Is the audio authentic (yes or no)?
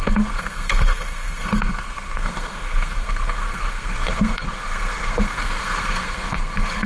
no